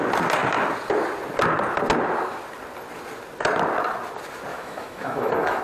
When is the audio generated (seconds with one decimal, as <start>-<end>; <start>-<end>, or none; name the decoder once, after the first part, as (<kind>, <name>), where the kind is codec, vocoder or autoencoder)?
4.5-5.6 (autoencoder, DAC-VAE)